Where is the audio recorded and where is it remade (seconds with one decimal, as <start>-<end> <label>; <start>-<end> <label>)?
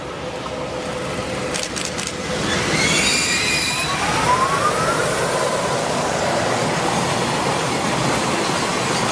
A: 0.0-5.8 recorded; 5.8-6.7 remade; 6.7-9.1 recorded